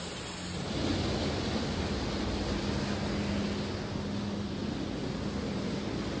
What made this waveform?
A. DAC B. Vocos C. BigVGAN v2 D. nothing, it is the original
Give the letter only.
D